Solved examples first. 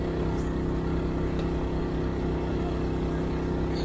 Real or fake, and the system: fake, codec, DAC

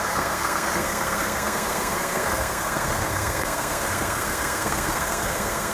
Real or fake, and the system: fake, codec, SNAC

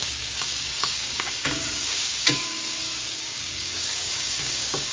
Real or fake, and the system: fake, codec, DAC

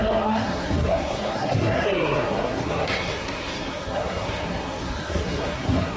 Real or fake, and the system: fake, codec, SNAC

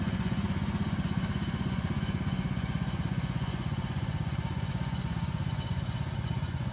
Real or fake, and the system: fake, vocoder, Vocos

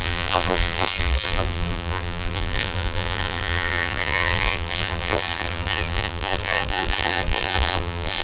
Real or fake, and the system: fake, vocoder, BigVGAN v2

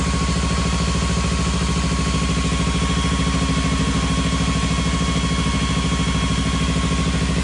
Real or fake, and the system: real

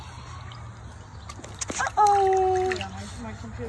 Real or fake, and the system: real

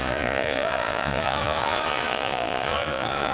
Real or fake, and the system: fake, vocoder, Vocos